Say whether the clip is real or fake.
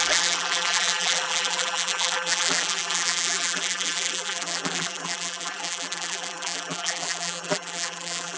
fake